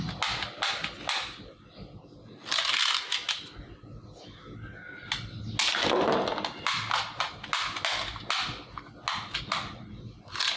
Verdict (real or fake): real